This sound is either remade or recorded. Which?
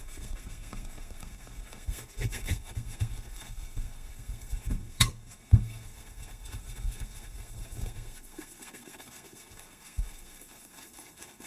remade